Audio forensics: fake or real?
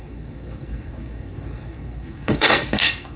fake